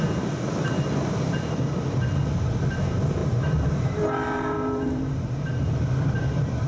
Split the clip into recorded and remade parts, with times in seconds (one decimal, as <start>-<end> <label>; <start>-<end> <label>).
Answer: 0.0-0.6 recorded; 0.6-1.5 remade; 1.5-3.2 recorded; 3.2-5.3 remade; 5.3-6.7 recorded